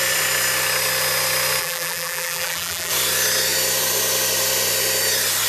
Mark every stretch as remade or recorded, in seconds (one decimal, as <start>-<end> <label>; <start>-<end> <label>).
0.0-1.6 recorded; 1.6-2.9 remade; 2.9-5.5 recorded